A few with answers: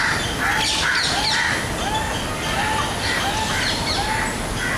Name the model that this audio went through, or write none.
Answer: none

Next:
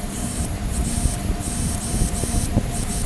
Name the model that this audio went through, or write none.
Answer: vocoder, BigVGAN v2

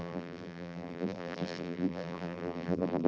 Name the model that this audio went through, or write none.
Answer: vocoder, BigVGAN v2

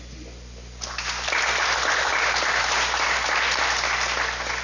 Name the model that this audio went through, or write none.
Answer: none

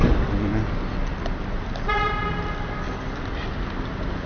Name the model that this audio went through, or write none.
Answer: none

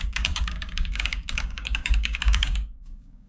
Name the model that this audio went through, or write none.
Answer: codec, DAC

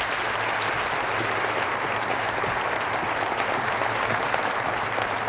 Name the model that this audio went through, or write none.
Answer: none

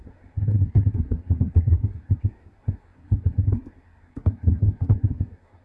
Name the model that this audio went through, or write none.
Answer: codec, SNAC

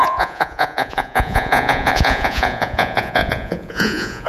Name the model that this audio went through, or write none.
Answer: vocoder, Vocos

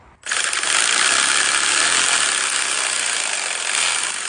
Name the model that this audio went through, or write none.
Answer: none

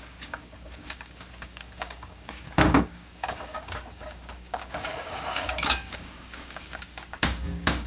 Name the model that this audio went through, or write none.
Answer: codec, DAC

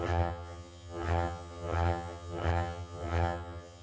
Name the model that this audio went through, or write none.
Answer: vocoder, HiFi-GAN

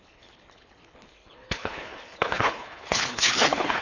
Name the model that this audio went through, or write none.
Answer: codec, HILCodec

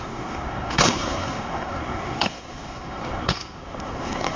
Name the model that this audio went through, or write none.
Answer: codec, SNAC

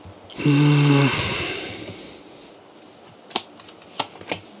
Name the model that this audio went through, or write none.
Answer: none